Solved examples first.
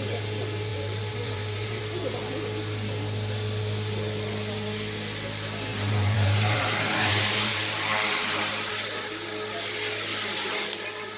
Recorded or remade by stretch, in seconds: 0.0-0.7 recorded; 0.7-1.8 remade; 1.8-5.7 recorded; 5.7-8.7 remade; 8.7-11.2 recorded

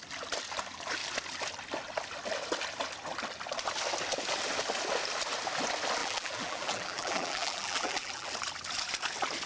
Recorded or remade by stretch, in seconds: 0.0-6.0 recorded; 6.0-8.3 remade; 8.3-9.5 recorded

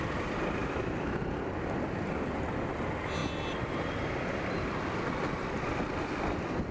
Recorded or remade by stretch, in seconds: 0.0-0.6 recorded; 0.6-1.2 remade; 1.2-6.7 recorded